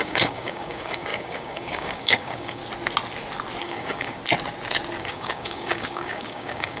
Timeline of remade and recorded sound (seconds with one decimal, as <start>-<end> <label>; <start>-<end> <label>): 0.0-2.6 remade; 2.6-3.6 recorded; 3.6-4.2 remade; 4.2-5.0 recorded; 5.0-6.8 remade